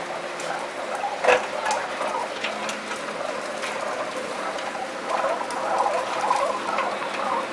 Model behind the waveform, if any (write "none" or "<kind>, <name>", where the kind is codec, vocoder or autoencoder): none